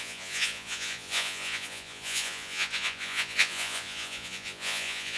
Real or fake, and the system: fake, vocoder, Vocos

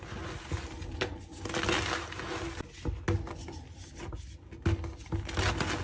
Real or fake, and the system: real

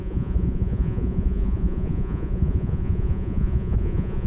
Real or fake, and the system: fake, vocoder, Vocos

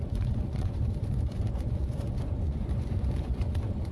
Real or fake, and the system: fake, vocoder, Vocos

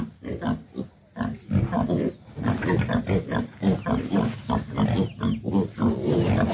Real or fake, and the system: real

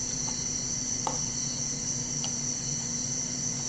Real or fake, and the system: fake, vocoder, Vocos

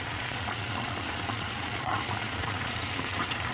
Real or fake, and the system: fake, vocoder, Vocos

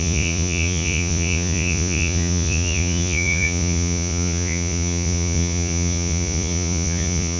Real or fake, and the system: fake, vocoder, Vocos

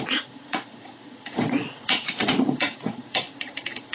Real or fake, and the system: fake, vocoder, Vocos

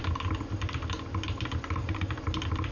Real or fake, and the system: real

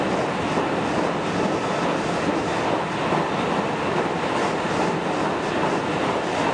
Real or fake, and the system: real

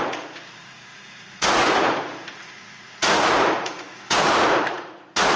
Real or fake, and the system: fake, vocoder, Vocos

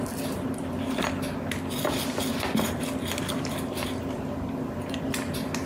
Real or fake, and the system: real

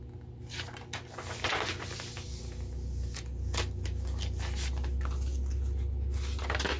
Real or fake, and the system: real